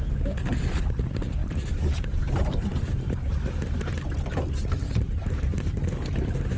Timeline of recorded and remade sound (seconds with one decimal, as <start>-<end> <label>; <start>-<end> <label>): 0.0-1.4 recorded; 1.4-3.7 remade; 3.7-4.8 recorded; 4.8-5.8 remade; 5.8-6.6 recorded